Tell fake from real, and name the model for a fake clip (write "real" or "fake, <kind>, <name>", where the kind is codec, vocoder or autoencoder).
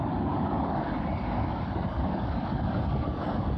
fake, codec, DAC